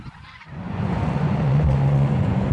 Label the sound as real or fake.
fake